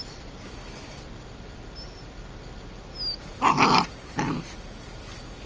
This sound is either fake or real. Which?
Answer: real